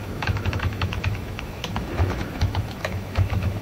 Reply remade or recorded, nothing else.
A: remade